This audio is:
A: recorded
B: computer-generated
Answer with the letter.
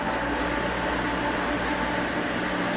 A